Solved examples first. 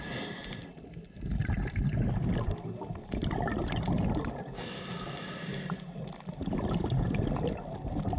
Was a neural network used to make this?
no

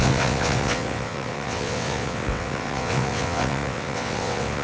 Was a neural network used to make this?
yes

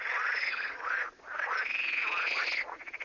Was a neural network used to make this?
yes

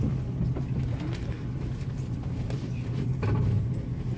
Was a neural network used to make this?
no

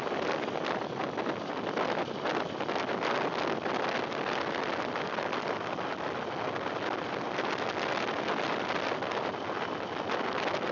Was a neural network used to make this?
no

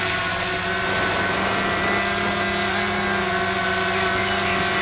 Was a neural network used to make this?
no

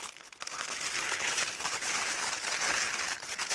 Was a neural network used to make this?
yes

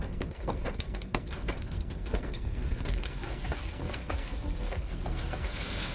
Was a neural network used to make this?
yes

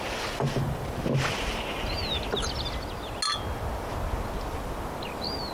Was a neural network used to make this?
no